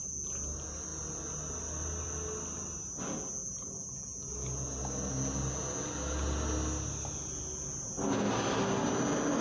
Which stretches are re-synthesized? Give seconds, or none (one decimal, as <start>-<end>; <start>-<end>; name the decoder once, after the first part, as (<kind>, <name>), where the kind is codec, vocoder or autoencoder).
none